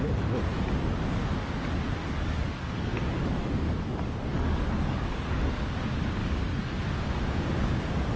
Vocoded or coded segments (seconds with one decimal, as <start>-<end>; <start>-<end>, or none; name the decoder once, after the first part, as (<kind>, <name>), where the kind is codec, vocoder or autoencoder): 2.0-5.8 (codec, DAC); 6.2-6.8